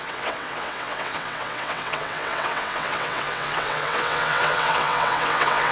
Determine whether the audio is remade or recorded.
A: remade